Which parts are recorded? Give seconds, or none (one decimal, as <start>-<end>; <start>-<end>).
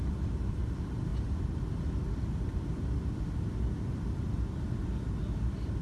1.1-4.6